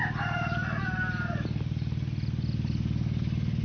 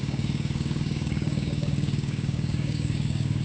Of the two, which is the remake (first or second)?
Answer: second